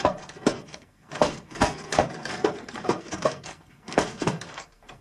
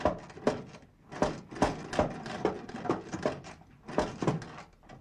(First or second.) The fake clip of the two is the first